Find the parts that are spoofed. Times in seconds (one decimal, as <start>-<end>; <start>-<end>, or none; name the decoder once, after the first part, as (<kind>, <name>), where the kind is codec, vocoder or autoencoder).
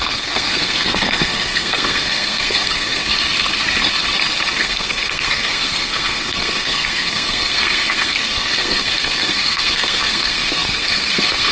0.0-3.0 (codec, SNAC); 4.6-11.5